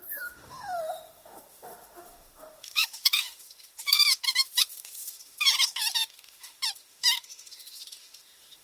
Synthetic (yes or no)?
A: yes